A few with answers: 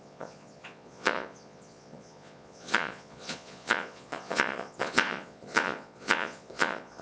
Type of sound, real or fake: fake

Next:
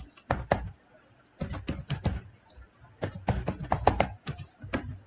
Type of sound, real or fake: real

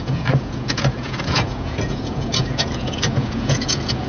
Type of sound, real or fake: fake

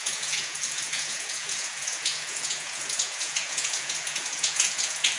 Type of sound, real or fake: fake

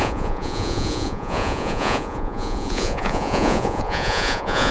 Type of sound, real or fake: fake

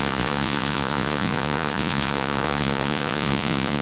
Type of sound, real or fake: fake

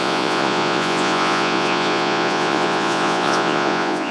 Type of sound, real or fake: fake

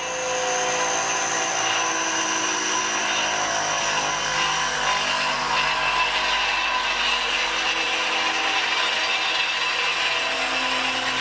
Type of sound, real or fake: real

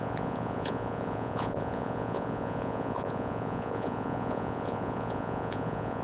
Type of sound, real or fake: fake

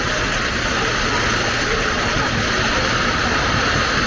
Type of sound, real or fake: real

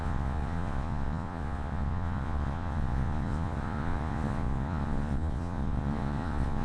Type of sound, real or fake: fake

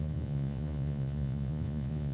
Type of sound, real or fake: fake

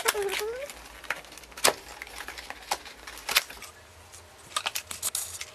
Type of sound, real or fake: real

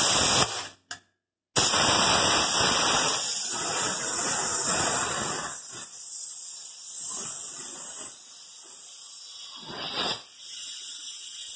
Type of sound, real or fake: real